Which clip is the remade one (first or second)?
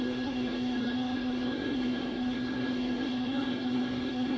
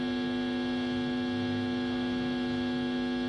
first